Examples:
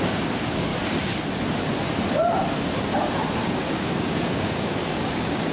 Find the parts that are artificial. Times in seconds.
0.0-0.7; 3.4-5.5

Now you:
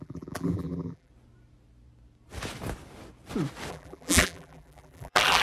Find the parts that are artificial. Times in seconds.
0.0-1.1; 3.7-5.4

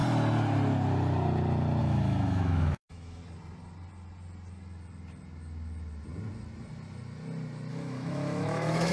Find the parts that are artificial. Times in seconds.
1.8-3.2; 7.7-8.9

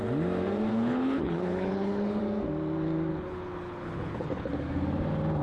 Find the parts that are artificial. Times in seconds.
0.7-2.2; 3.1-4.5